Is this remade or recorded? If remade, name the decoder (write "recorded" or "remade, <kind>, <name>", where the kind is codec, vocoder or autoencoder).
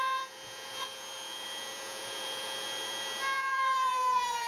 remade, vocoder, Vocos